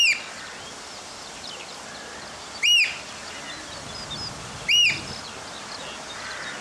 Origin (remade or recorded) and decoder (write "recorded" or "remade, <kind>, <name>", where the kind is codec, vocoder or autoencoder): recorded